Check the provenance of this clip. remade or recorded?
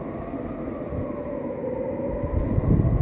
recorded